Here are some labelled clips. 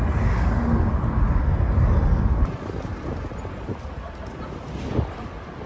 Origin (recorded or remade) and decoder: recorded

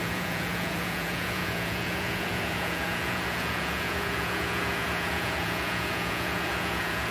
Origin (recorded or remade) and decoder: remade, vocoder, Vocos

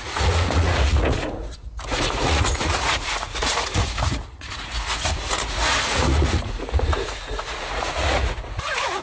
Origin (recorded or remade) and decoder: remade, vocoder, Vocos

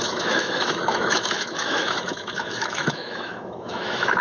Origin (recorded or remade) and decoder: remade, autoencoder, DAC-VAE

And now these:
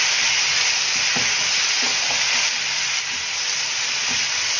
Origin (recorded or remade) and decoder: recorded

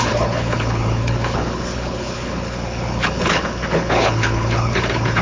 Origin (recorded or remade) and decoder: remade, codec, HILCodec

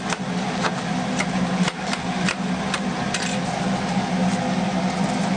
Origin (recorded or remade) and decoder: recorded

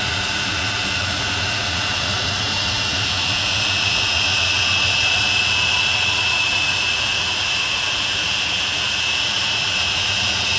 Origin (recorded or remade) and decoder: remade, vocoder, Vocos